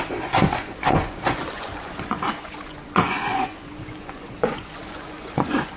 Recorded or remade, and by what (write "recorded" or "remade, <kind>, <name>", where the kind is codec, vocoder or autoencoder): remade, vocoder, Vocos